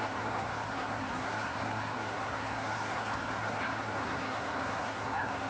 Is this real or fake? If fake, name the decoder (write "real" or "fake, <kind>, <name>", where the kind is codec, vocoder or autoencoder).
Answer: fake, codec, SNAC